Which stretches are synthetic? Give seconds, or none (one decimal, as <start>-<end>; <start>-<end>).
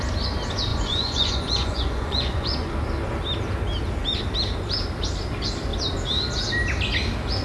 0.7-2.7